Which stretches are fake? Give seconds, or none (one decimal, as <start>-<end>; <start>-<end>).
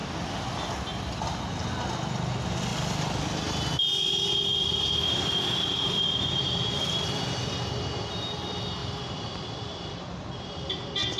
4.5-7.2; 8.8-10.7